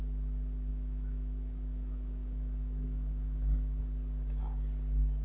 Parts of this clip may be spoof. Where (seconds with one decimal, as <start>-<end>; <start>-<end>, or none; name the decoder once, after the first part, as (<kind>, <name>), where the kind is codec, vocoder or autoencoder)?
0.7-3.8 (autoencoder, DAC-VAE)